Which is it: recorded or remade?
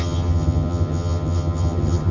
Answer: remade